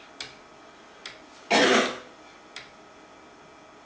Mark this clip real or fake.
real